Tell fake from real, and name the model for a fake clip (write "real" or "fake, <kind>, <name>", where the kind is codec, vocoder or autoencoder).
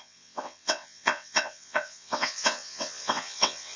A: fake, vocoder, WaveNeXt